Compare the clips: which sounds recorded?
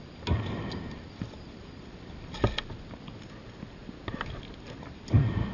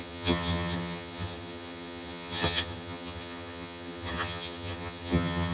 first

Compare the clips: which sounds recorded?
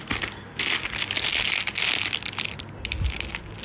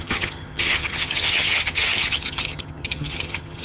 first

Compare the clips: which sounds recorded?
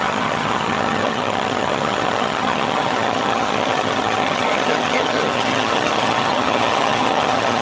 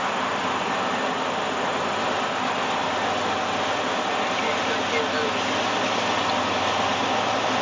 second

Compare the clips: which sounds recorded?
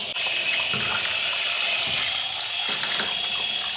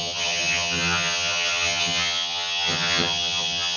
first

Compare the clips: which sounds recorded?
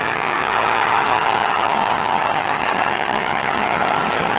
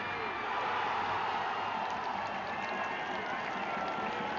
second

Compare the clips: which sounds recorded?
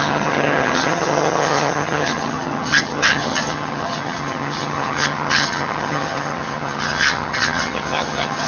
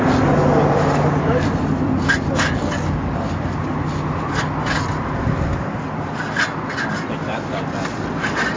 second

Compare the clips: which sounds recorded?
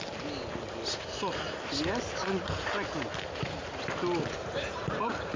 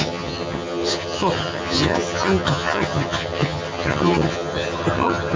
first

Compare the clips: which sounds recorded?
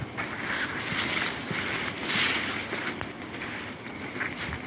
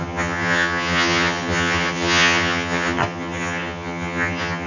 first